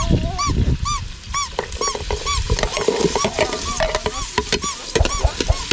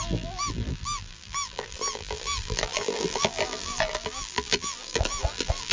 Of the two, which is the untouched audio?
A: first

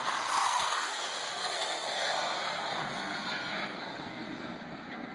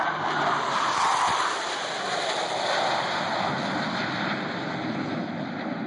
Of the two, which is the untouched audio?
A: second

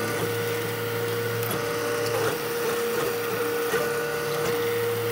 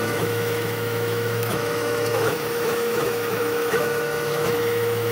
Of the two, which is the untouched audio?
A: first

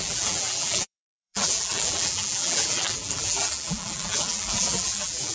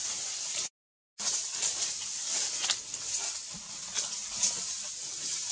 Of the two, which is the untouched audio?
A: second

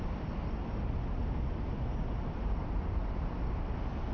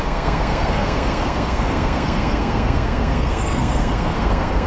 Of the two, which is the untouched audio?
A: first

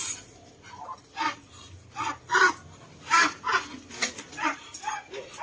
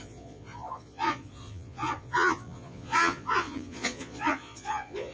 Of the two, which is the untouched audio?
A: first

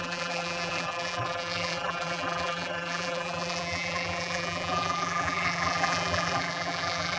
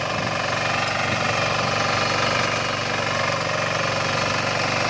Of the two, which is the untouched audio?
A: second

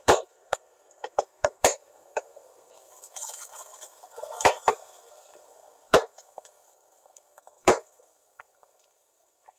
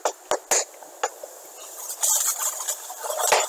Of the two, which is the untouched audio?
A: second